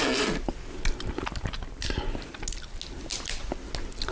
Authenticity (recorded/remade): recorded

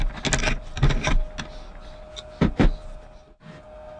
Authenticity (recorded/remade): recorded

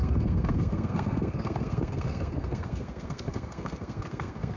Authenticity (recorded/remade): remade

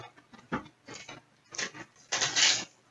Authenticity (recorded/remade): recorded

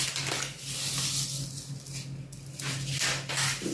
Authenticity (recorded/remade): recorded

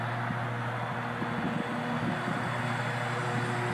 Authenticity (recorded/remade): recorded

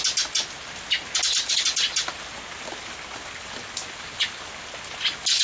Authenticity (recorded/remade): recorded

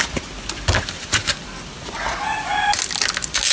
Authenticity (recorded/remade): recorded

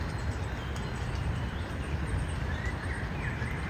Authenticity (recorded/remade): recorded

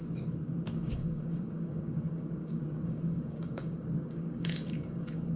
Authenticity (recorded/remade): remade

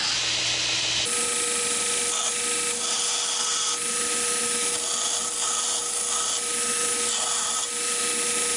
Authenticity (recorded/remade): recorded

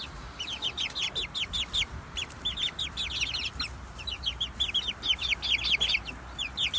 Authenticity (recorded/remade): recorded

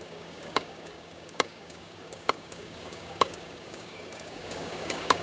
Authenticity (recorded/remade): remade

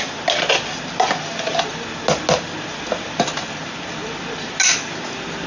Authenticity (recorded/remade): recorded